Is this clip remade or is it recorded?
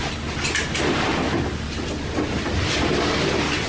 recorded